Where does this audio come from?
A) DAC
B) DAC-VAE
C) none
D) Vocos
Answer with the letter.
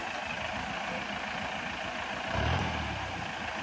C